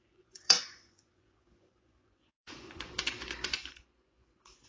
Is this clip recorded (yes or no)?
no